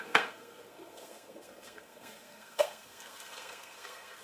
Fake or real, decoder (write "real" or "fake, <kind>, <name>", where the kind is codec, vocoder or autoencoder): fake, codec, SNAC